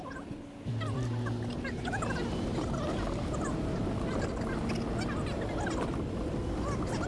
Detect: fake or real real